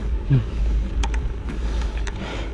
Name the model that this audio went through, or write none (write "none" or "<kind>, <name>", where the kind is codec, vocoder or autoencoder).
codec, DAC